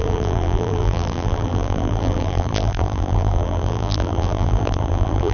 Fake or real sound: fake